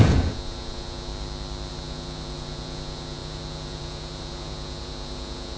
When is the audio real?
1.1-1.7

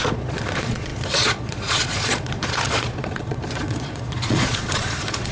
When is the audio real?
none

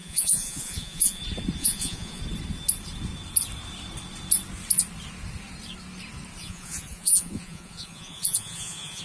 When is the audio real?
1.2-1.6; 2.2-6.4

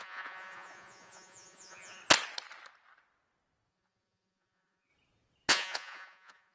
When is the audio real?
2.0-3.7; 4.9-5.5

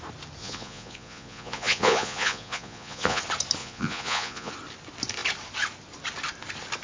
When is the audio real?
0.0-0.4; 3.2-3.6; 4.5-6.8

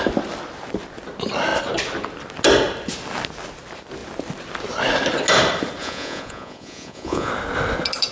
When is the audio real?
0.0-5.8; 7.3-8.1